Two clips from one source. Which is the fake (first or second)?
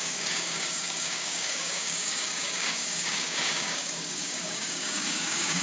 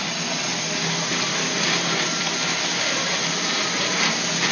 first